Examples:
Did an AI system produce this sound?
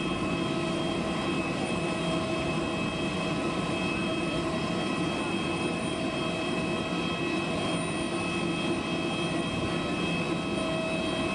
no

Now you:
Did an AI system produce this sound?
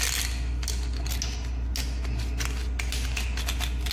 no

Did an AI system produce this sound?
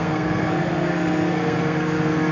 yes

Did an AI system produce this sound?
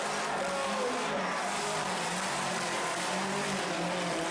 no